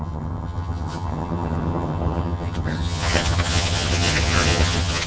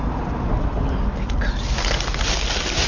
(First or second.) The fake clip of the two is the first